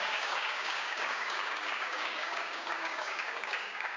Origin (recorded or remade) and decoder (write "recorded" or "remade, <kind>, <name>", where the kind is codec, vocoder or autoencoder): remade, codec, DAC